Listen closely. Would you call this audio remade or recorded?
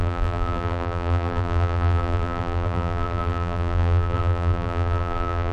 remade